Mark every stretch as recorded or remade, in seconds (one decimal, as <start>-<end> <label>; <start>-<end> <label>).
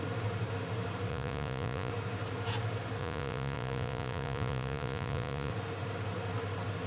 0.0-1.1 recorded; 1.1-1.9 remade; 1.9-3.0 recorded; 3.0-5.5 remade; 5.5-6.9 recorded